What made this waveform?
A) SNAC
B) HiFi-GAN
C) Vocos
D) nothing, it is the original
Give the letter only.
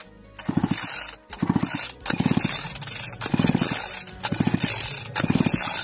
D